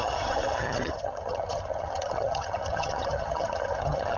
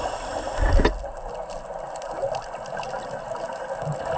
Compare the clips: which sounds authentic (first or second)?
second